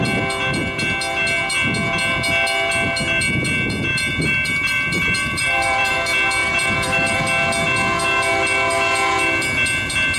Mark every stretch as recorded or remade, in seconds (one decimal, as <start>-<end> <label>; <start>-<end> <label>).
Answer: 0.0-3.9 recorded; 3.9-5.9 remade; 5.9-6.4 recorded; 6.4-7.2 remade; 7.2-10.2 recorded